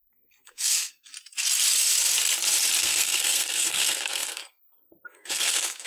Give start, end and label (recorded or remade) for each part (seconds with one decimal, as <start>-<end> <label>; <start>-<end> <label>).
0.0-1.1 remade; 1.1-2.8 recorded; 2.8-5.9 remade